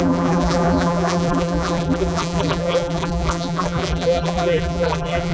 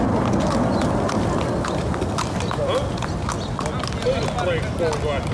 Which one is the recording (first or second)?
second